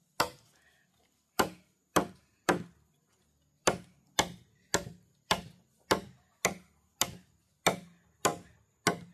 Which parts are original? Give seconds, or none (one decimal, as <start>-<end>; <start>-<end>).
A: 0.0-9.1

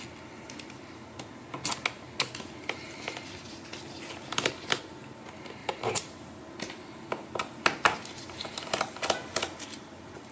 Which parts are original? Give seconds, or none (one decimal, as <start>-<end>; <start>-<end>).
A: 0.0-5.6; 6.4-10.3

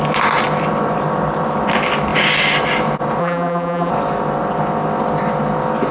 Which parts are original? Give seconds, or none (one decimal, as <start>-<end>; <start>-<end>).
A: 0.0-3.2; 3.9-5.9

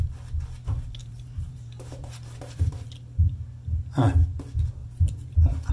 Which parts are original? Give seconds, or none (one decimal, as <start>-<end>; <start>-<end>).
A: 0.0-1.0; 2.6-4.8

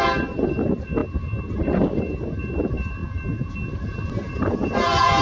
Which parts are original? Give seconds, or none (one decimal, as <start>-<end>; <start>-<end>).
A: 1.0-1.5; 3.0-4.3